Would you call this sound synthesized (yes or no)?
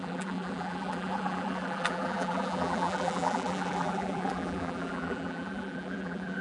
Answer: yes